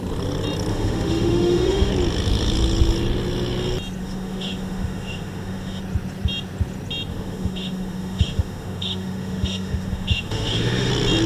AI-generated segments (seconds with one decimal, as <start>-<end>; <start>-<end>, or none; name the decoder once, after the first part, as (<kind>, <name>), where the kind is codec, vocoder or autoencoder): 0.7-1.9 (autoencoder, DAC-VAE); 4.0-5.8; 7.1-10.9